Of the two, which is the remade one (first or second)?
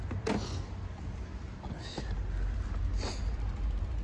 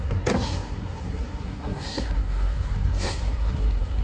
second